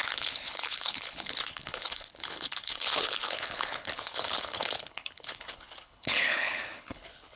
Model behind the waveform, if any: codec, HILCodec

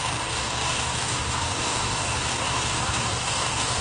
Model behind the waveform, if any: codec, DAC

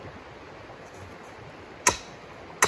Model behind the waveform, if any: none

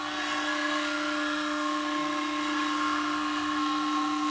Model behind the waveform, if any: codec, SNAC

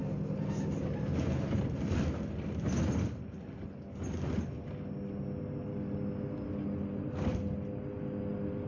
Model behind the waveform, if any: none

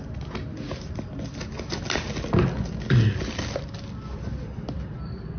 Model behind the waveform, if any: none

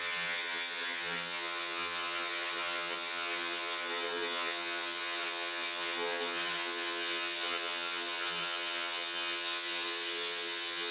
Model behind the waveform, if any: vocoder, HiFi-GAN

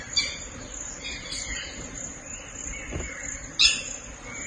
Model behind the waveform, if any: none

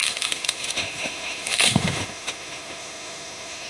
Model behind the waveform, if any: autoencoder, DAC-VAE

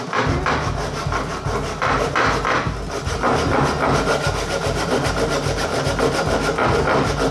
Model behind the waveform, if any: none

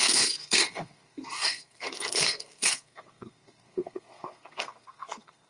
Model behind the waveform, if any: codec, SNAC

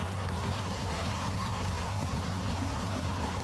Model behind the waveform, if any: codec, SNAC